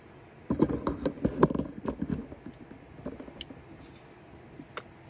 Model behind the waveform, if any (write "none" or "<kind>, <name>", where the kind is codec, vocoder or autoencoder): none